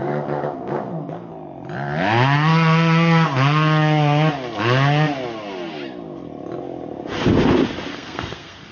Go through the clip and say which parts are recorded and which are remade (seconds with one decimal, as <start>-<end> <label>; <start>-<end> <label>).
0.0-1.3 remade; 1.3-7.9 recorded; 7.9-8.7 remade